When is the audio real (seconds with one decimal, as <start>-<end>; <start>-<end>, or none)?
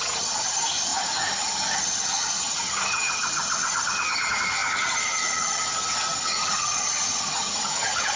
none